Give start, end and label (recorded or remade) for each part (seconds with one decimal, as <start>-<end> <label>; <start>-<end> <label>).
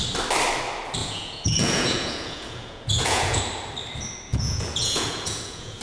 0.0-1.0 recorded; 1.0-3.4 remade; 3.4-4.3 recorded; 4.3-5.8 remade